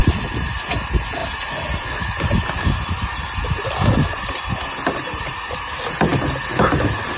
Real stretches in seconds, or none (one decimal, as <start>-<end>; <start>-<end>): 0.0-7.2